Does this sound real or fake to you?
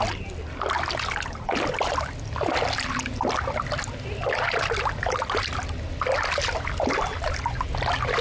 real